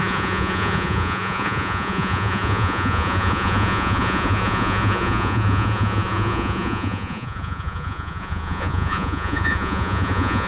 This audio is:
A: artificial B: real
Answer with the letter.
A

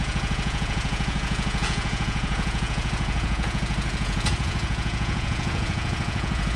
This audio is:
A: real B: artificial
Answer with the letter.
B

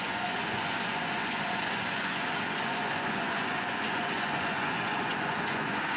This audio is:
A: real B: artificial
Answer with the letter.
B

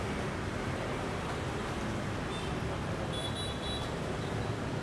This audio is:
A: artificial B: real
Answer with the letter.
B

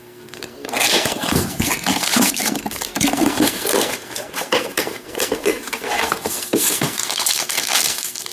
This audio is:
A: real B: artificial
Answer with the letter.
B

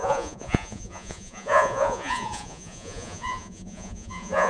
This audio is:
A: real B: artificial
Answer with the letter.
B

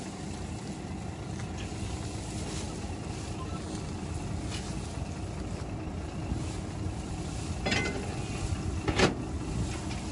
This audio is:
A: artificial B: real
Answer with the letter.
B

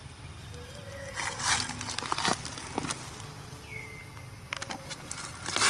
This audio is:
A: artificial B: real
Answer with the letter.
B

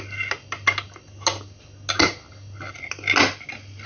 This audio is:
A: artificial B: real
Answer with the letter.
B